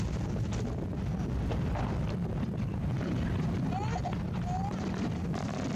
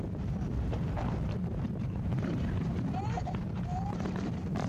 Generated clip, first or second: second